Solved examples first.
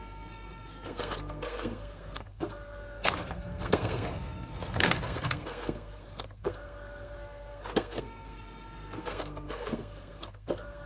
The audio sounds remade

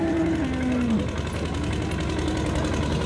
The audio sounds recorded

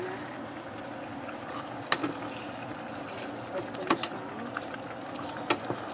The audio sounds recorded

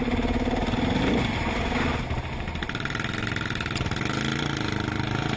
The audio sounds recorded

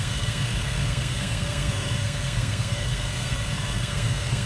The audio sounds remade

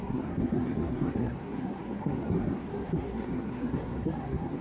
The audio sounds remade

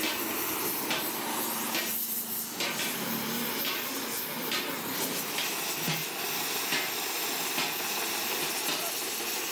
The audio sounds recorded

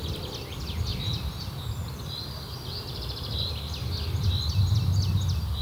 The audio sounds recorded